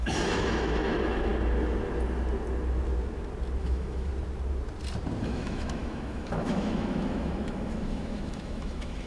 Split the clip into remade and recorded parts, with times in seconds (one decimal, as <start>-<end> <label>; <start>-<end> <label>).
0.0-1.3 remade; 1.3-3.6 recorded; 3.6-4.1 remade; 4.1-5.2 recorded; 5.2-9.1 remade